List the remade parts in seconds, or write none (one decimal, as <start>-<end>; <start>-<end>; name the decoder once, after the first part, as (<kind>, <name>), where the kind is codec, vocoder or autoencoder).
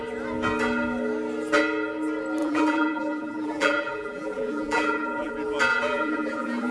2.4-5.3 (vocoder, BigVGAN v2); 5.7-6.7